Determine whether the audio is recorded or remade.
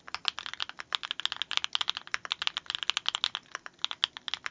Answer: recorded